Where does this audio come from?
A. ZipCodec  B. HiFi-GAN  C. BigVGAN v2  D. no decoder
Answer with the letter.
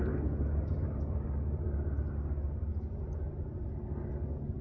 D